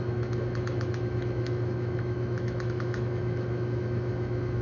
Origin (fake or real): fake